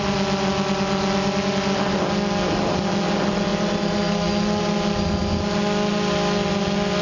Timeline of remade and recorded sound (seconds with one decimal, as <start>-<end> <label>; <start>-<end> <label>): 0.0-7.0 recorded